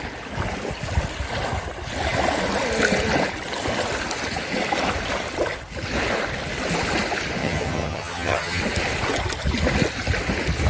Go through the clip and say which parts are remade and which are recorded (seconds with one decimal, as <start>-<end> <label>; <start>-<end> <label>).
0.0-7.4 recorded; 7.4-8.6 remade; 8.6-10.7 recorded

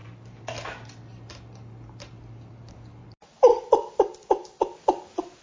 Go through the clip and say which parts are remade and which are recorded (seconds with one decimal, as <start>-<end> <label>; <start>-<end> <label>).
0.0-5.4 recorded

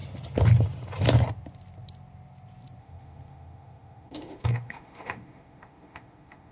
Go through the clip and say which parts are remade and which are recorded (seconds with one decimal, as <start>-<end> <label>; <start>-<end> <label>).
0.0-2.8 recorded; 2.8-6.5 remade

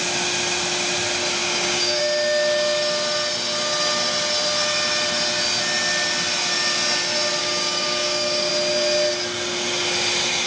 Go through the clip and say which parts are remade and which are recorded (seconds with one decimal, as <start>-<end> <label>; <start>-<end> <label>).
0.0-1.4 recorded; 1.4-2.0 remade; 2.0-7.4 recorded; 7.4-8.5 remade; 8.5-10.5 recorded

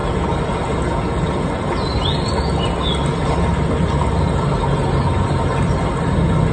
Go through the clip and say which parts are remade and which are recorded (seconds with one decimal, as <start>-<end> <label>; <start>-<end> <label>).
0.0-6.5 recorded

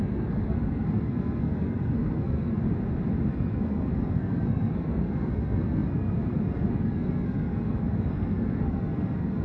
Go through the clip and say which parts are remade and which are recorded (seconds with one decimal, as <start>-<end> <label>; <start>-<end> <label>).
0.0-2.6 remade; 2.6-3.3 recorded; 3.3-9.4 remade

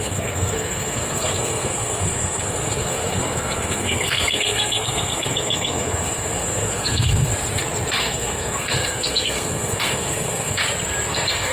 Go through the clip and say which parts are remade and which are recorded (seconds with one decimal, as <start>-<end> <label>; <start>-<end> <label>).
0.0-7.3 remade; 7.3-8.0 recorded; 8.0-10.6 remade; 10.6-11.1 recorded; 11.1-11.5 remade